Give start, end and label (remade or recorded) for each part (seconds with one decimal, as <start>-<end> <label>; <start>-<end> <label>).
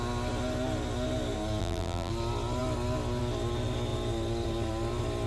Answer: 0.0-1.6 recorded; 1.6-2.1 remade; 2.1-5.3 recorded